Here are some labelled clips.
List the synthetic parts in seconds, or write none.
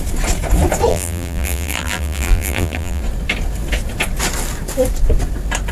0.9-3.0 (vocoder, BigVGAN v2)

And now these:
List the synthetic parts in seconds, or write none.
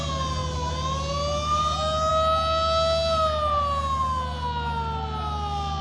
none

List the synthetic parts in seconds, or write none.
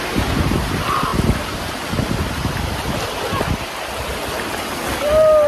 none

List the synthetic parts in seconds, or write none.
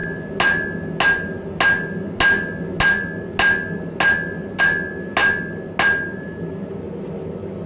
none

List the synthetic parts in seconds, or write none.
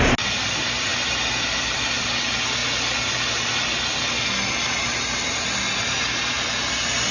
0.9-2.1 (vocoder, BigVGAN v2)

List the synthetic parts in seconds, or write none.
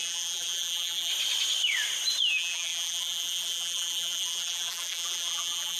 0.0-1.1 (vocoder, BigVGAN v2); 2.3-5.8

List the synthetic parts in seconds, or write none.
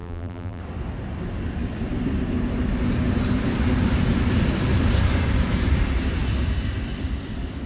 0.0-0.6 (vocoder, BigVGAN v2)